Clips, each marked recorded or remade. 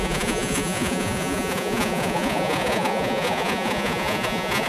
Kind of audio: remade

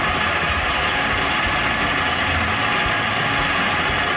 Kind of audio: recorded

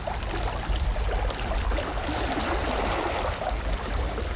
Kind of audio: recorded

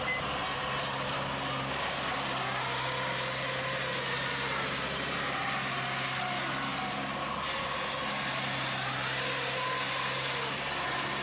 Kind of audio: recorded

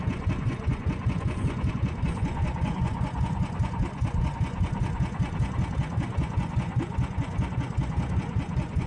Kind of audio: remade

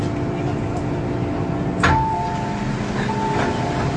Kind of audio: recorded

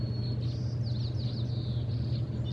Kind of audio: recorded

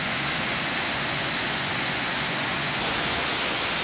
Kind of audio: remade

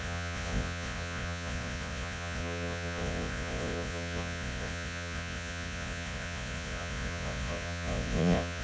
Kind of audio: remade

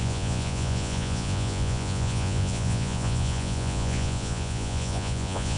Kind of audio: remade